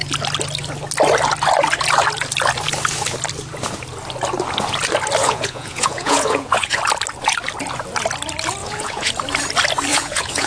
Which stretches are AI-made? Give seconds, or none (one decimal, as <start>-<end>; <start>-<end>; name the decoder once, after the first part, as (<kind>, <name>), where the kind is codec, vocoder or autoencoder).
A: 5.2-6.8 (vocoder, Vocos); 8.6-9.1; 9.9-10.5